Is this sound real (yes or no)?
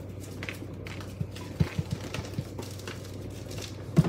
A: yes